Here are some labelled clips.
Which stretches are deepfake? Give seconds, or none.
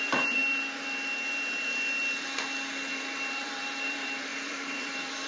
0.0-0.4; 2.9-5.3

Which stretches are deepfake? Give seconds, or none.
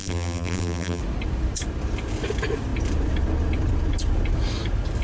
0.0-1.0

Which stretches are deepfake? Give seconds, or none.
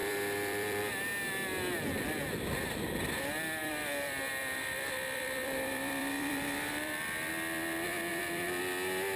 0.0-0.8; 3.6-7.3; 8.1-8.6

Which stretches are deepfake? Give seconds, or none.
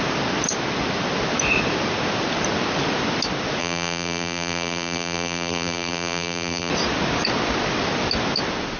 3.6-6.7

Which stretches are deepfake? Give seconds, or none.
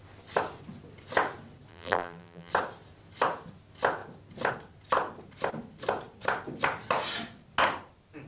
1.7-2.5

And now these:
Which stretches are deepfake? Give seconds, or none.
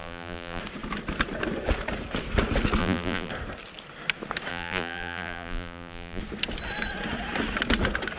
0.0-0.6; 2.8-3.3; 4.5-6.2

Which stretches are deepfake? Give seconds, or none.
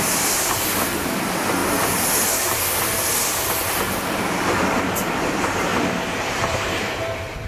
0.0-1.6; 4.8-5.7; 6.3-7.5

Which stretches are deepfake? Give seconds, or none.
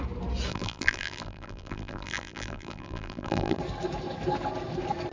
0.5-3.6